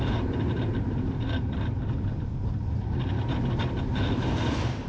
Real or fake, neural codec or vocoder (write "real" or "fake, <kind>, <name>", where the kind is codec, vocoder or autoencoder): real